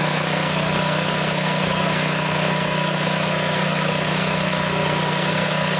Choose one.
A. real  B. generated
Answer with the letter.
B